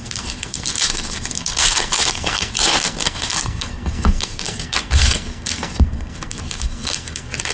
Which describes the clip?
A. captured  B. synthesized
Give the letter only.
B